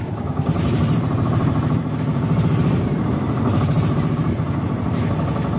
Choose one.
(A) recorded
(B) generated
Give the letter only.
B